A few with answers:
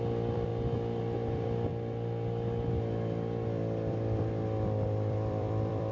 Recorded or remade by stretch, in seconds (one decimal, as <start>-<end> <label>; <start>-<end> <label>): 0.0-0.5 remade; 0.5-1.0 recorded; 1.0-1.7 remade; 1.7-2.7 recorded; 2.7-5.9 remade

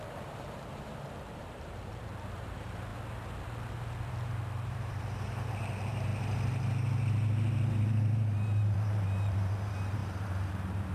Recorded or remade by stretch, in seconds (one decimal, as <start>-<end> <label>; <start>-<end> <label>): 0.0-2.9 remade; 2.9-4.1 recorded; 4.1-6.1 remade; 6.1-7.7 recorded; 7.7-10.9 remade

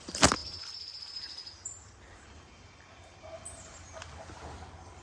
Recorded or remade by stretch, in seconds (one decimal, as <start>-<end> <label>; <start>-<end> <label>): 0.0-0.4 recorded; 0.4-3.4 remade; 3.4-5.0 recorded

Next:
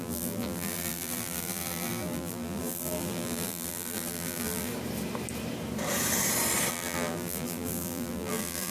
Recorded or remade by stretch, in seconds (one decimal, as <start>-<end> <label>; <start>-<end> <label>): 0.0-4.7 remade; 4.7-6.7 recorded; 6.7-8.7 remade